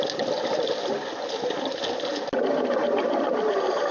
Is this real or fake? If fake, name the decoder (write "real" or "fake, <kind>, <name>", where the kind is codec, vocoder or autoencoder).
real